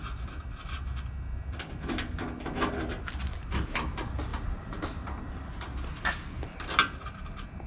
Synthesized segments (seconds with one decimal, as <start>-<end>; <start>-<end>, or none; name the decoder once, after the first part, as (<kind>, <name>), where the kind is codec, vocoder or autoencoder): 4.3-5.2 (vocoder, BigVGAN v2)